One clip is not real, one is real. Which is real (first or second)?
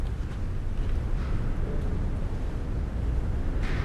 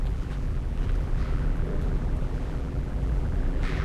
first